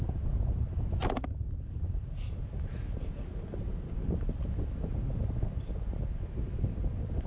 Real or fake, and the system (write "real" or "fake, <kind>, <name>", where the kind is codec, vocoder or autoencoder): real